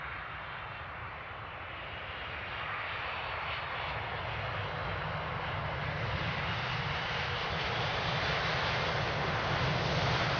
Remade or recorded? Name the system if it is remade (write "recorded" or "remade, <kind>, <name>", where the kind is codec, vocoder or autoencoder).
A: recorded